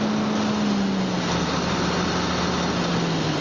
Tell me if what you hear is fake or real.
real